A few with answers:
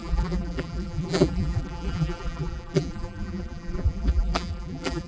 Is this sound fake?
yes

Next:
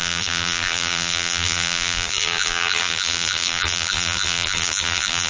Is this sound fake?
yes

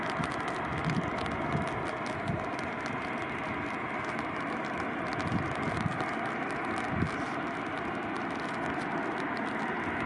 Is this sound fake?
no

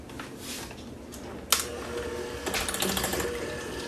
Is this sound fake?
no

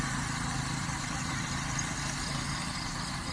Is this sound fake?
yes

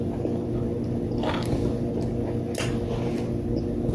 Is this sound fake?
no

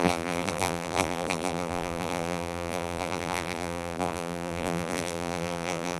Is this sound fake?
yes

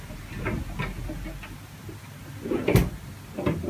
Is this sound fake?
no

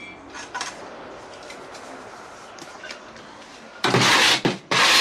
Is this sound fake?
no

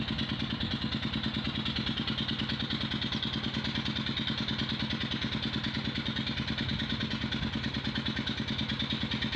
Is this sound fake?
no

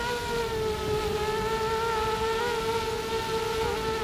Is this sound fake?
no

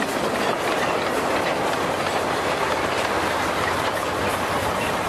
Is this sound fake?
no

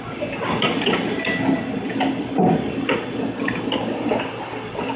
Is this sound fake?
no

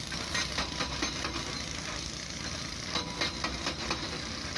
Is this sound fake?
no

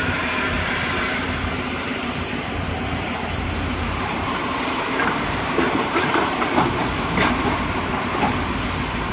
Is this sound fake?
yes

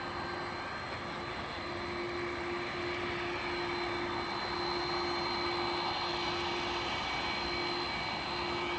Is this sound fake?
no